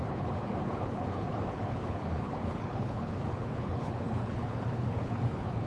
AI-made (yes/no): yes